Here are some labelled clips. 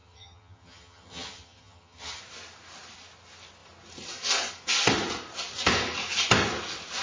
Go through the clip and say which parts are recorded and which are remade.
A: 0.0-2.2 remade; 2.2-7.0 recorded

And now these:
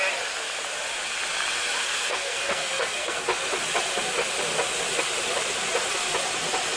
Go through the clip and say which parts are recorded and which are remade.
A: 0.0-1.8 recorded; 1.8-3.2 remade; 3.2-6.8 recorded

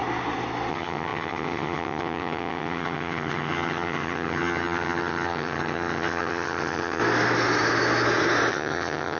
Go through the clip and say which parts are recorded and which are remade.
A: 0.0-0.7 recorded; 0.7-7.0 remade; 7.0-8.5 recorded; 8.5-9.2 remade

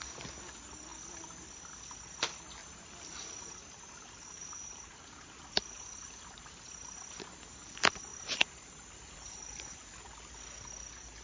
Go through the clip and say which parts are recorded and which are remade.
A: 0.0-2.6 recorded; 2.6-6.4 remade; 6.4-8.1 recorded; 8.1-10.0 remade; 10.0-11.2 recorded

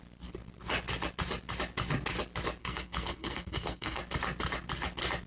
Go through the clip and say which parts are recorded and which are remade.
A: 0.0-2.6 recorded; 2.6-4.0 remade; 4.0-5.3 recorded